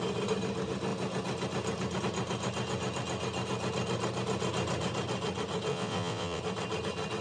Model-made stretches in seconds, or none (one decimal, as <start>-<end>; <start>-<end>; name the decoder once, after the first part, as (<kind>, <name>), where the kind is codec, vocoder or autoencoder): 5.7-6.4 (vocoder, WaveNeXt)